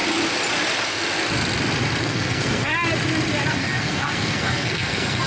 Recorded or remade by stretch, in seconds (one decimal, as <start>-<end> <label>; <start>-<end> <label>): 0.0-2.0 recorded; 2.0-2.7 remade; 2.7-3.5 recorded; 3.5-5.3 remade